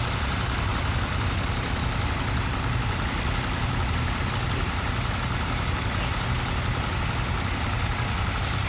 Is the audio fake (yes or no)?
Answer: no